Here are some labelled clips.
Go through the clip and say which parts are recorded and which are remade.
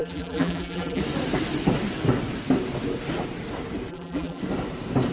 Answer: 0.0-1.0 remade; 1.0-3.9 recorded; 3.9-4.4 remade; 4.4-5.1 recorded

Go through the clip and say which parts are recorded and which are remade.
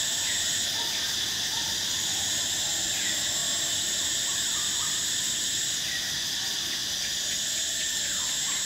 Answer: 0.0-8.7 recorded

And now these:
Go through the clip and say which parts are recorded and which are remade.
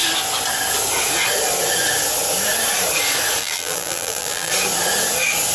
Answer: 0.0-3.4 recorded; 3.4-4.5 remade; 4.5-5.5 recorded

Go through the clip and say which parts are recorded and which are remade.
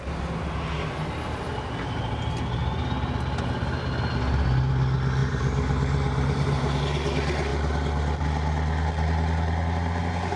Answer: 0.0-5.2 recorded; 5.2-6.8 remade; 6.8-10.4 recorded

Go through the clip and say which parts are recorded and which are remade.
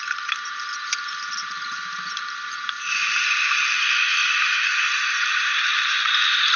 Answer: 0.0-6.6 remade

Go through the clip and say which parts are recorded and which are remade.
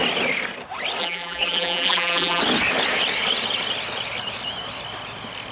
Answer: 0.0-1.0 recorded; 1.0-2.4 remade; 2.4-5.5 recorded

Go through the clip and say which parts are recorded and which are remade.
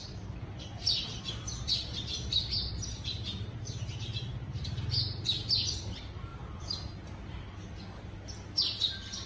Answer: 0.0-9.3 recorded